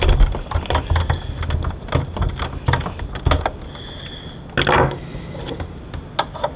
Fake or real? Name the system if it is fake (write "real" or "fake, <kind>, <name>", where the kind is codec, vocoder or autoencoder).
real